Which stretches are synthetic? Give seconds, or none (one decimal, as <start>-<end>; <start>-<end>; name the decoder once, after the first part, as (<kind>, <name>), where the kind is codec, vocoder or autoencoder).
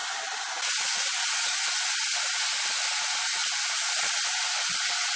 none